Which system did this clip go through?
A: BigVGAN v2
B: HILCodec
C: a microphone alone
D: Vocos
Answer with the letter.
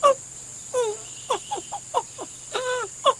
C